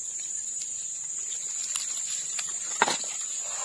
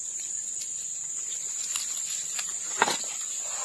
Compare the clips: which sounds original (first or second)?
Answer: second